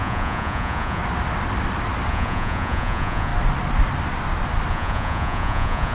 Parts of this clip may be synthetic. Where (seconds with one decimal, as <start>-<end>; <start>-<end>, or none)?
0.0-1.0; 2.1-3.3; 4.7-5.9